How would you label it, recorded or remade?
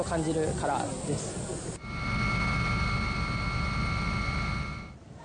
recorded